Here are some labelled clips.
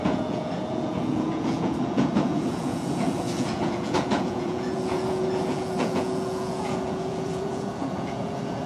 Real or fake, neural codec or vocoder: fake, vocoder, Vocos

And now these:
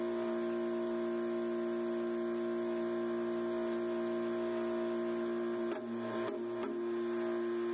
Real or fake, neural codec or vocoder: real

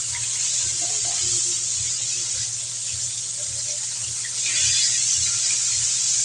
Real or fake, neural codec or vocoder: real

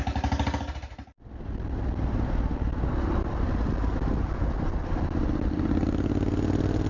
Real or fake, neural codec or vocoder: real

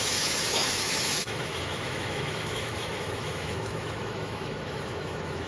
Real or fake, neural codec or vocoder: fake, autoencoder, DAC-VAE